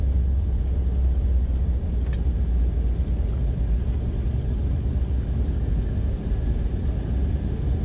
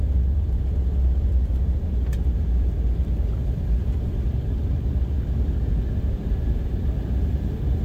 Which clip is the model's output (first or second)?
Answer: second